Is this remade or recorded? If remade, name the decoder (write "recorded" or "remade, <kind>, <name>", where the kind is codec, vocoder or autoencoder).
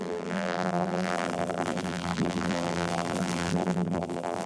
remade, vocoder, BigVGAN v2